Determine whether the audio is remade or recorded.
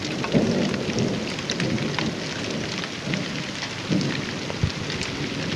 recorded